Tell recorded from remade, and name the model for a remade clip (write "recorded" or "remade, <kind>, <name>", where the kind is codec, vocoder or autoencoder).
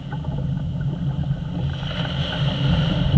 recorded